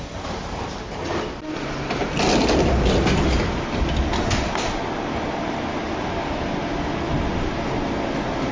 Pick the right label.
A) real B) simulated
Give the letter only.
A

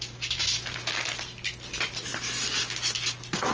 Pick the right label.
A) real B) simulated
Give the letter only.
A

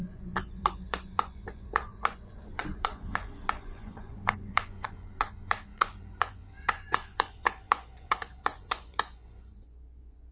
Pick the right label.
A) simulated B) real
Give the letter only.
A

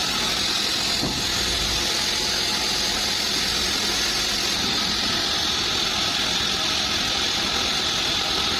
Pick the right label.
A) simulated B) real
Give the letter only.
B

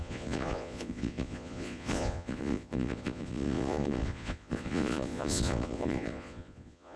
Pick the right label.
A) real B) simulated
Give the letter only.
B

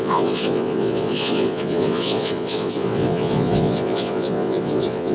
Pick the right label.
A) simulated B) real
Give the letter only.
A